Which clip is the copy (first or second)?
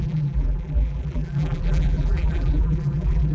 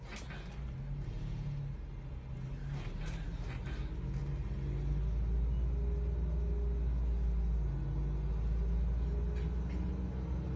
first